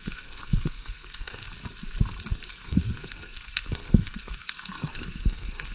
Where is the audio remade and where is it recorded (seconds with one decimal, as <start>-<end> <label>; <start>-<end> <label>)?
0.0-1.4 remade; 1.4-2.5 recorded; 2.5-5.7 remade